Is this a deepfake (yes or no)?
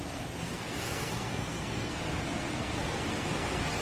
yes